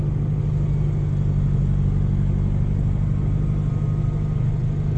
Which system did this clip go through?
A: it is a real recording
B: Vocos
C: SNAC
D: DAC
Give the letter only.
A